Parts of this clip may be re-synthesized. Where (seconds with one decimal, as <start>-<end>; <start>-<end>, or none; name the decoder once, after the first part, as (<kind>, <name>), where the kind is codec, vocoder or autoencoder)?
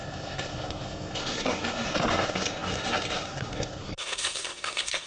0.0-5.1 (codec, SNAC)